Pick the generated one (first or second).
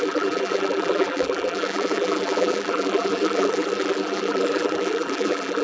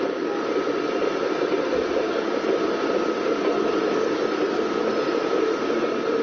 first